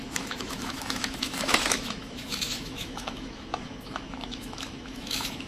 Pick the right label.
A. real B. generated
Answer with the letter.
B